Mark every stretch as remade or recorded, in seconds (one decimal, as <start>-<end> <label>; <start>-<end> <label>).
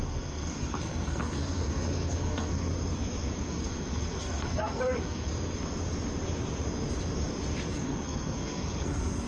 0.0-2.7 remade; 2.7-3.4 recorded; 3.4-5.3 remade; 5.3-7.7 recorded; 7.7-9.3 remade